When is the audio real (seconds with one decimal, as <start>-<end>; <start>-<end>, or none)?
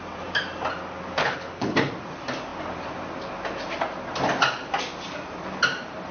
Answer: 0.0-1.2; 1.9-6.1